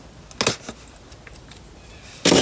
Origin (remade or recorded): recorded